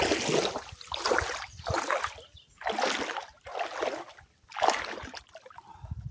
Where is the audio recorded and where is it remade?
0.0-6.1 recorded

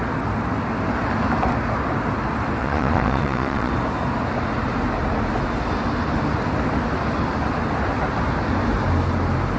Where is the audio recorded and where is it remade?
0.0-2.6 recorded; 2.6-3.7 remade; 3.7-9.6 recorded

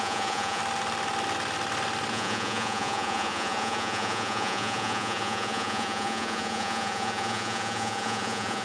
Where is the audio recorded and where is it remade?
0.0-0.6 remade; 0.6-2.1 recorded; 2.1-8.6 remade

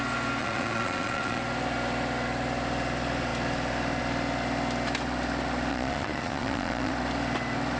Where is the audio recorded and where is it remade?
0.0-0.4 recorded; 0.4-1.4 remade; 1.4-5.7 recorded; 5.7-6.9 remade; 6.9-7.8 recorded

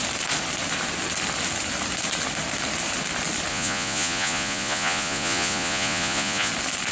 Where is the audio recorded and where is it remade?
0.0-3.5 recorded; 3.5-6.5 remade; 6.5-6.9 recorded

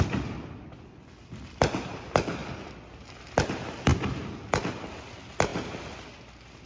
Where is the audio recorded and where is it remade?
0.0-6.7 recorded

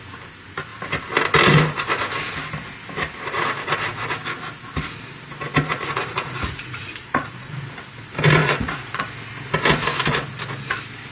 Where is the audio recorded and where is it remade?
0.0-5.7 recorded; 5.7-7.6 remade; 7.6-8.4 recorded; 8.4-9.0 remade; 9.0-11.1 recorded

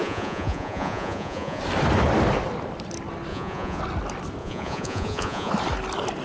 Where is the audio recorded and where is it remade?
0.0-1.6 remade; 1.6-3.3 recorded; 3.3-3.8 remade; 3.8-4.4 recorded; 4.4-5.5 remade; 5.5-6.2 recorded